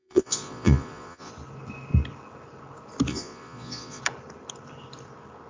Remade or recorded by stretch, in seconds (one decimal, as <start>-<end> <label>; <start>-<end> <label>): 0.0-1.3 remade; 1.3-3.1 recorded; 3.1-4.0 remade; 4.0-5.5 recorded